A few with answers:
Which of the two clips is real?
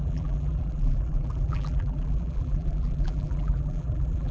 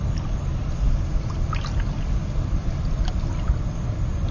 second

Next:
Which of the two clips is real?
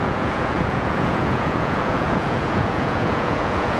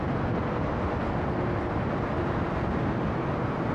second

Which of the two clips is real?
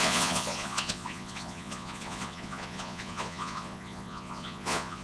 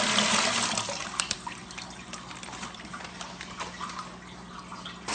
second